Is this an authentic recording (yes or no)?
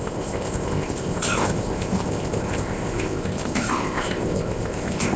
no